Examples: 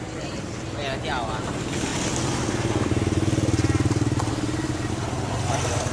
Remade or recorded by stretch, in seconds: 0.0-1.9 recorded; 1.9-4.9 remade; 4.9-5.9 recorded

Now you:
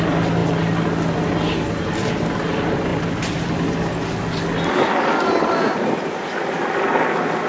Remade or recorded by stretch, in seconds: 0.0-7.5 recorded

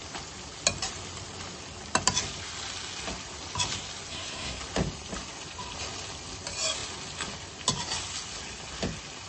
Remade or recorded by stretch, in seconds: 0.0-4.1 recorded; 4.1-4.6 remade; 4.6-9.3 recorded

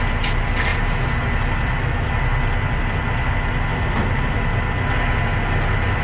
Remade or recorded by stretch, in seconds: 0.0-6.0 recorded

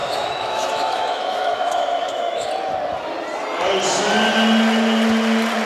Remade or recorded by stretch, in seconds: 0.0-2.5 remade; 2.5-5.7 recorded

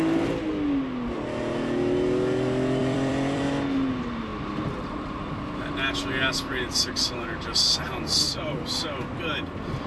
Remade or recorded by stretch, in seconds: 0.0-2.8 recorded; 2.8-3.5 remade; 3.5-9.9 recorded

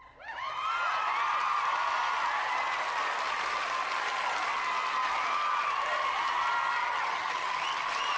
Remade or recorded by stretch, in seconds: 0.0-6.8 recorded; 6.8-7.5 remade; 7.5-8.2 recorded

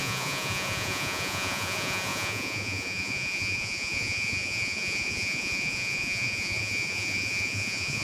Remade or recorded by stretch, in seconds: 0.0-8.0 remade